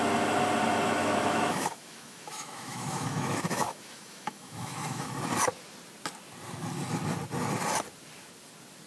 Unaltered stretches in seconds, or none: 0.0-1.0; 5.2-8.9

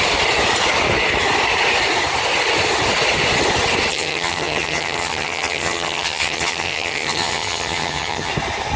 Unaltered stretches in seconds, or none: 0.0-3.9; 8.3-8.8

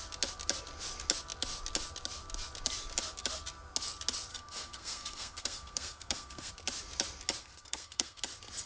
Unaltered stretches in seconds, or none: 0.0-4.3; 6.5-7.4; 8.2-8.7

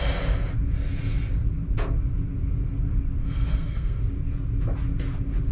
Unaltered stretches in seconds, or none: 0.0-3.2; 4.0-5.5

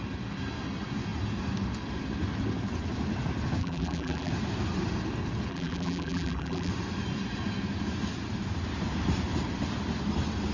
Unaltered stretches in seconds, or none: 0.0-3.6; 4.3-5.5; 6.7-10.5

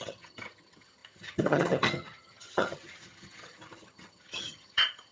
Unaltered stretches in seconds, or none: none